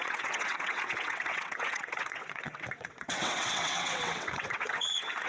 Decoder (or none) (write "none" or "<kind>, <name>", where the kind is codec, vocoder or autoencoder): vocoder, WaveNeXt